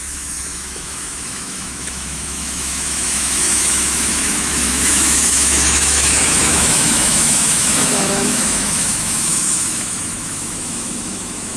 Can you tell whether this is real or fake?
fake